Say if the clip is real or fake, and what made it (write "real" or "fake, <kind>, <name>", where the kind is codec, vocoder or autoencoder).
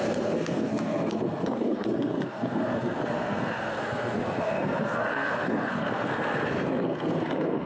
fake, codec, SNAC